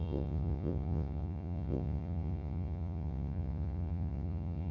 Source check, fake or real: fake